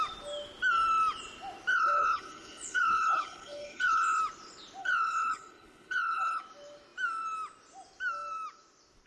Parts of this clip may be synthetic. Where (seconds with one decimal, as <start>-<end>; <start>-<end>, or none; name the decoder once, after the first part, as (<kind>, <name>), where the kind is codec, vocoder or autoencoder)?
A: 1.7-4.2 (codec, HILCodec); 4.8-6.4